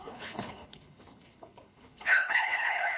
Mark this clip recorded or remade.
remade